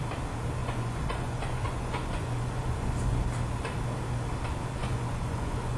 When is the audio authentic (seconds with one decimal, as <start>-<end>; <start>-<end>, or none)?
0.0-0.6; 3.2-4.8